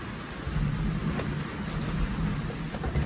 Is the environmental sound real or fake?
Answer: real